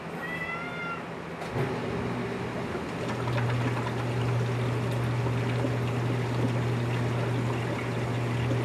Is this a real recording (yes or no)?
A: yes